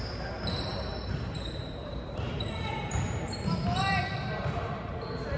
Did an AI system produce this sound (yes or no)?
yes